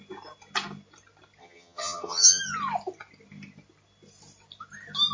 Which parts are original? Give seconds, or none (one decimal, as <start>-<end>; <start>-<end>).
0.0-1.4; 2.4-5.1